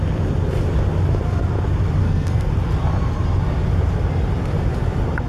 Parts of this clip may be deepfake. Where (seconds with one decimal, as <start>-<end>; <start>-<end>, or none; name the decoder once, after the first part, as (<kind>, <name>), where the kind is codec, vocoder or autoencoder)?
2.0-2.5 (codec, SNAC)